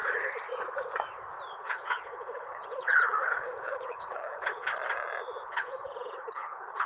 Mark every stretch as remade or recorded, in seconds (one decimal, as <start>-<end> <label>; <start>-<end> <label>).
0.0-1.5 recorded; 1.5-4.7 remade; 4.7-5.5 recorded; 5.5-6.9 remade